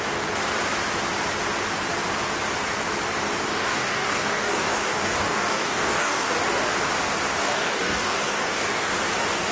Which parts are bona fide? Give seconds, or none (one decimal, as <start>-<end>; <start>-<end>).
0.0-3.5; 6.3-7.4; 8.9-9.5